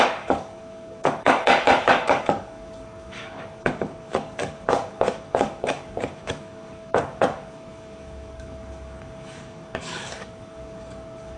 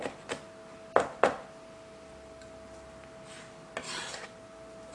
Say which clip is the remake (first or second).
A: first